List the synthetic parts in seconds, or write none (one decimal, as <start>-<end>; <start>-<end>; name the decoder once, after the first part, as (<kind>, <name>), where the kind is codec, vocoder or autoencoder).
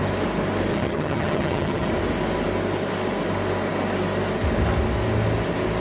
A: 0.7-1.9 (vocoder, HiFi-GAN)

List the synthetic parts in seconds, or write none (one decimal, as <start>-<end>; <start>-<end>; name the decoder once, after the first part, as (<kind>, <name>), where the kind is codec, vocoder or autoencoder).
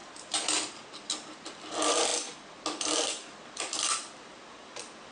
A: none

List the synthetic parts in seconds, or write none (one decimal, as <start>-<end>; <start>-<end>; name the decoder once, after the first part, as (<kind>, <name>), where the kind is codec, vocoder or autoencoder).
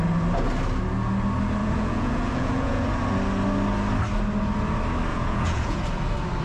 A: 1.6-2.9 (vocoder, Vocos); 5.1-5.8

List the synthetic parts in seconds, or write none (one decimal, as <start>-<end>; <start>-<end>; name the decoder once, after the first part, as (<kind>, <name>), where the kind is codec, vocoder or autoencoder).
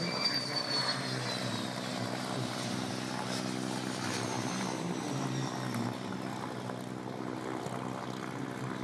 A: none